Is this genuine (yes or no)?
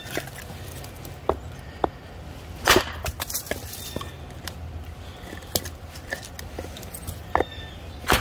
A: yes